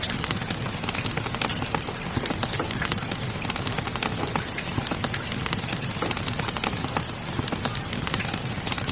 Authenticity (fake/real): real